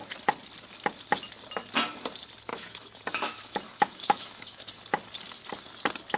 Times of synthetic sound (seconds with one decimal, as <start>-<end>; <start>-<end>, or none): 2.5-4.7